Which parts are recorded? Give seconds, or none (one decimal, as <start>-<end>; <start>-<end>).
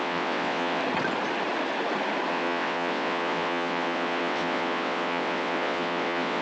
0.8-2.3